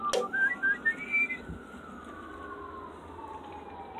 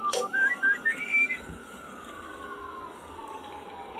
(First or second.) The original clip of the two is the first